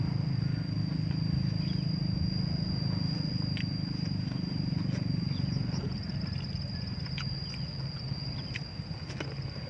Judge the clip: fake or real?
real